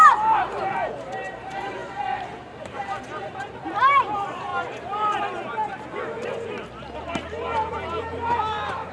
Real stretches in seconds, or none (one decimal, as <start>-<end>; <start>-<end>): 4.5-7.0